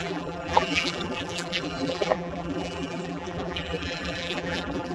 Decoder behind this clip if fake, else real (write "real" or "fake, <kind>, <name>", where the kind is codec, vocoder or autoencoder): fake, vocoder, BigVGAN v2